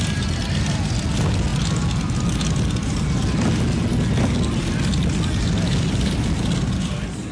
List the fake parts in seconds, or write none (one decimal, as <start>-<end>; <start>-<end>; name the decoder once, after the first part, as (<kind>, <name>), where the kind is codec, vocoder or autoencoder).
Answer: none